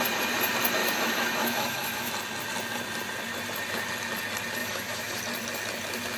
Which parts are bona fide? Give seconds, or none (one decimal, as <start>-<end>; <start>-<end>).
0.0-0.8; 2.1-4.6; 5.2-6.2

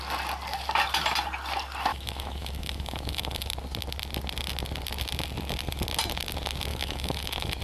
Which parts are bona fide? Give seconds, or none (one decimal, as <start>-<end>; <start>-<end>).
0.0-1.9; 3.5-6.7

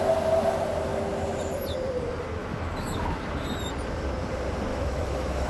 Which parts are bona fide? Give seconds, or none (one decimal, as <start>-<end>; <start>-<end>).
0.0-2.4; 3.2-4.7

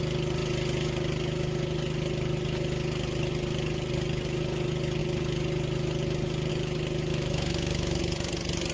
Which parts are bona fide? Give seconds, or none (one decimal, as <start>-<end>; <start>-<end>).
0.0-7.1; 8.0-8.7